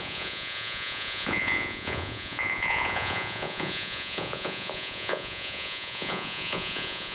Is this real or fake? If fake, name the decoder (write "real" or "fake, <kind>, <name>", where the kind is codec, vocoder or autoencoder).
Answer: fake, vocoder, Vocos